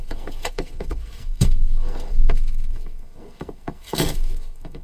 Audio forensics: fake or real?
fake